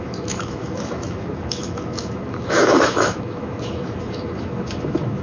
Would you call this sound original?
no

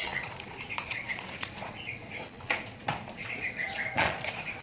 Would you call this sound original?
no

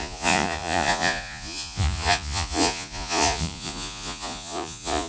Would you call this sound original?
no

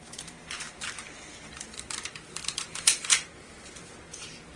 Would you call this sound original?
no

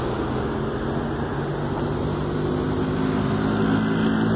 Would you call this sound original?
yes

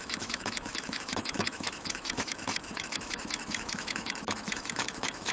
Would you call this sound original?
no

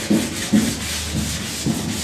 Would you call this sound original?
yes